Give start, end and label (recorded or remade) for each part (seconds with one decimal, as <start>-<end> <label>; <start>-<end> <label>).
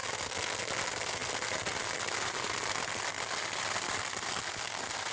0.0-1.2 recorded; 1.2-4.3 remade; 4.3-5.1 recorded